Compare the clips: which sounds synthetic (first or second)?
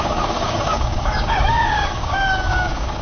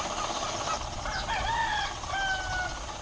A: first